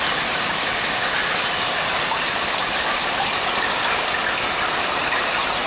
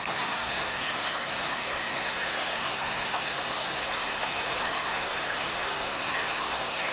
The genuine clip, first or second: first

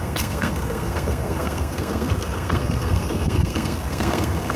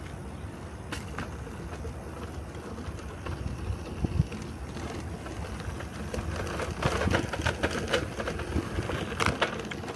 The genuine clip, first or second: second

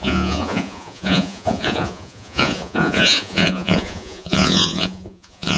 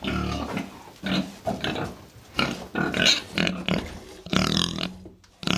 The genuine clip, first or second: second